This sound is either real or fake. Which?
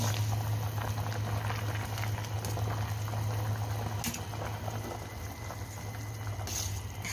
real